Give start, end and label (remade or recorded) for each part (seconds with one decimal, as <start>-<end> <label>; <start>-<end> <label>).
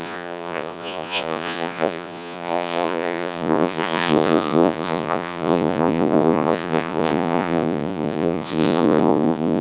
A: 0.0-9.6 remade